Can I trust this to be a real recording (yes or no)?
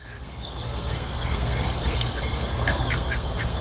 no